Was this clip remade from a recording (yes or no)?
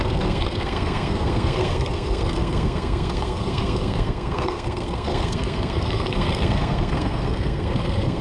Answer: yes